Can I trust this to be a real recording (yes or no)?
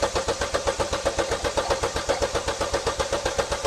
yes